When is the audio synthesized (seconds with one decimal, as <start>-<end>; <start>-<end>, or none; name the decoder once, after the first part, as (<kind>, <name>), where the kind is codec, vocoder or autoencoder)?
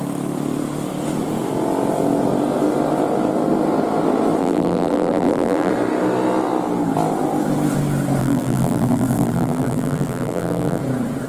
4.4-5.7 (vocoder, BigVGAN v2); 8.2-10.8